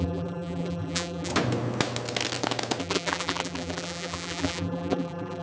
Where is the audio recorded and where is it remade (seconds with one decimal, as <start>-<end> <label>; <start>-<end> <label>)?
0.0-1.3 remade; 1.3-2.8 recorded; 2.8-5.4 remade